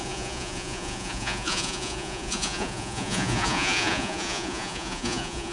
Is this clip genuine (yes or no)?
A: no